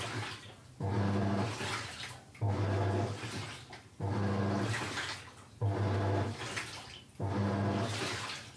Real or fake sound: real